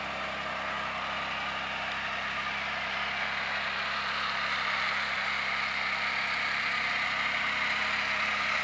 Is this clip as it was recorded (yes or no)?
yes